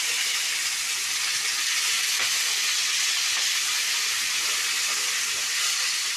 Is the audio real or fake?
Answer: real